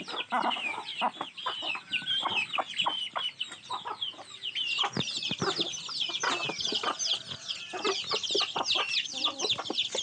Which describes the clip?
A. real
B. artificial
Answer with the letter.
A